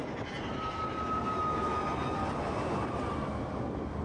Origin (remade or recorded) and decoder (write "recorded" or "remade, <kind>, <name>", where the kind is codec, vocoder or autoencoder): recorded